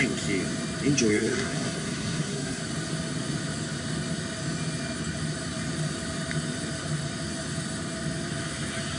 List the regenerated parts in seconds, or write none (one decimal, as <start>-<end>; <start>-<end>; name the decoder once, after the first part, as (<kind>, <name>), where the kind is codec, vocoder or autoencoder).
1.1-2.6 (codec, SNAC)